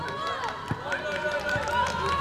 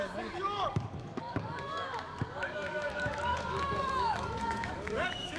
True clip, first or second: first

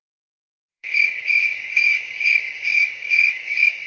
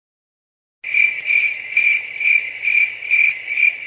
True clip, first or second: second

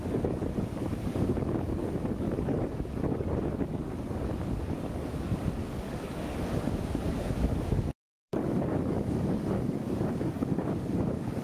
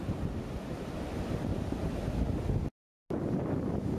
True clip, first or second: second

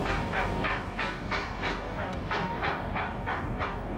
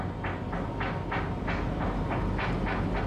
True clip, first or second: second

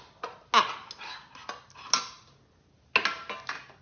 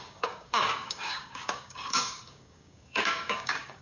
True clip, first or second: first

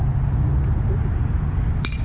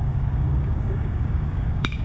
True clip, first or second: first